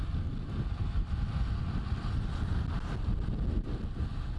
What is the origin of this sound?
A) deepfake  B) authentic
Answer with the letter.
B